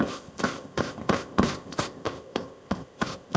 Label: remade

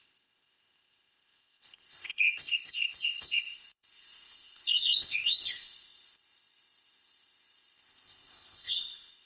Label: remade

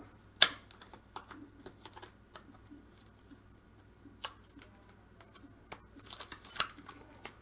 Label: recorded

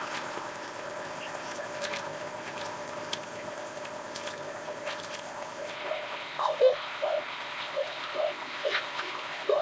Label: remade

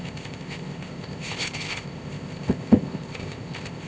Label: remade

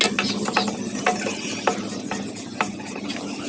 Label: recorded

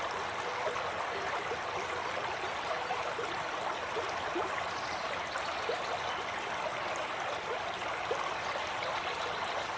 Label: recorded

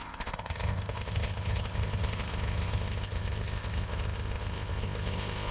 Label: remade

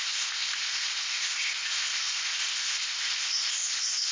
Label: remade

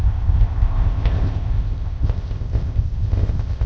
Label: remade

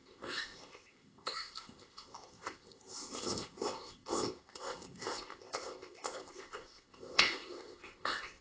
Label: remade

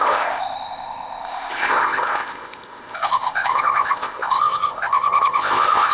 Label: remade